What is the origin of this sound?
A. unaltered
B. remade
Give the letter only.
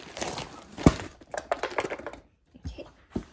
B